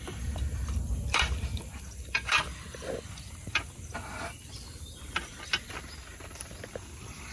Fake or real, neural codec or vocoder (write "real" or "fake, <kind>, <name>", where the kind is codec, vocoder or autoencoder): fake, vocoder, BigVGAN v2